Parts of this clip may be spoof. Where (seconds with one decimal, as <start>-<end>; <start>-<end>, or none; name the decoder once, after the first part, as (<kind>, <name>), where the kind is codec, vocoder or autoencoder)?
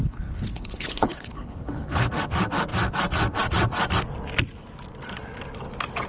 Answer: 0.0-2.1 (codec, HILCodec)